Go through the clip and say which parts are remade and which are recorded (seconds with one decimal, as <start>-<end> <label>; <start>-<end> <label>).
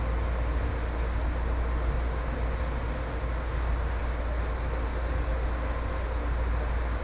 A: 0.0-7.0 recorded